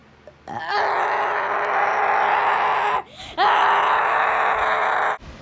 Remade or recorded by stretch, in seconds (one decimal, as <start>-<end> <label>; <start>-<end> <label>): 0.0-5.4 recorded